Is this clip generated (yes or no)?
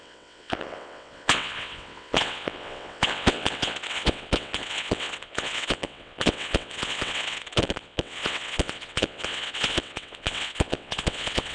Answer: yes